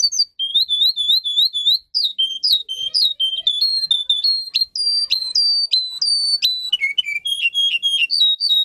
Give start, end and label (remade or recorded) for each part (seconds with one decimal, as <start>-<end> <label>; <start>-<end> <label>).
0.0-8.6 recorded